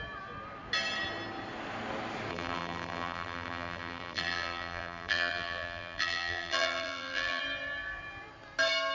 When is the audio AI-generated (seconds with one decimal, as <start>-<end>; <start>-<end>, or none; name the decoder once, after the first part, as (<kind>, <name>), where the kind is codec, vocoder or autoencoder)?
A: 2.3-7.4 (vocoder, BigVGAN v2)